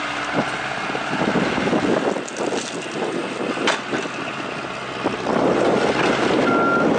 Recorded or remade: recorded